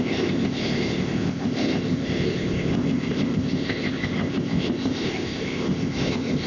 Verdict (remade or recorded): remade